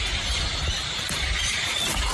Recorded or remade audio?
remade